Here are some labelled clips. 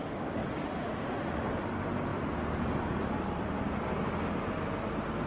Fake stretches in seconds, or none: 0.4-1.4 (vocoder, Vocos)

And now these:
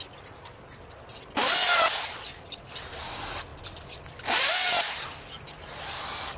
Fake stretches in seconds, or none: none

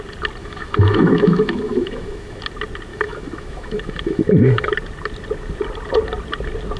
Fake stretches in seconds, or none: 0.4-2.4 (autoencoder, DAC-VAE); 2.9-4.7

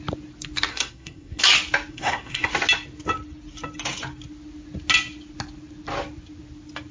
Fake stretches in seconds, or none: 0.7-1.4 (codec, SNAC); 1.9-2.5

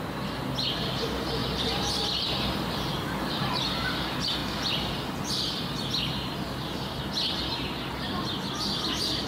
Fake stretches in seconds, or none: none

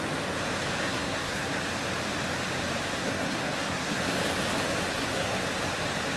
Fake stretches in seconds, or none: 0.8-1.6 (codec, SNAC); 2.9-4.1; 4.9-5.4